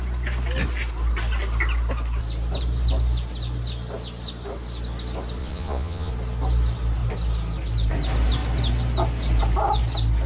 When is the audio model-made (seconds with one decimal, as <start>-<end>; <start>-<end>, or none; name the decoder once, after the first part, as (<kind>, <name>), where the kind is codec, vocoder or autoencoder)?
5.4-6.1 (vocoder, Vocos)